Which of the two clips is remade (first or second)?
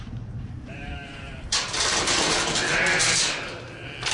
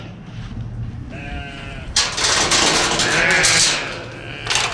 first